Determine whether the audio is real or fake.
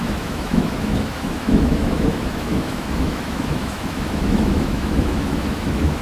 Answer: fake